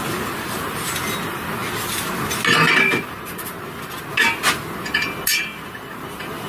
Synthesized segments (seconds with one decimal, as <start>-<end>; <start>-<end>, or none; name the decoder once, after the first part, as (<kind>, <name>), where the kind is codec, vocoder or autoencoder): none